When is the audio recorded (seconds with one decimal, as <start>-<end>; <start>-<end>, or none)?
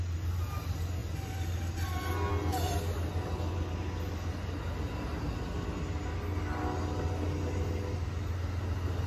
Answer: 0.0-9.1